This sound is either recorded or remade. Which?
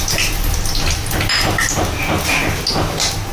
recorded